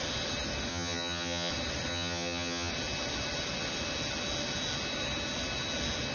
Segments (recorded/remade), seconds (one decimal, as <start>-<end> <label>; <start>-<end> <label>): 0.0-0.7 recorded; 0.7-1.5 remade; 1.5-1.9 recorded; 1.9-2.7 remade; 2.7-6.1 recorded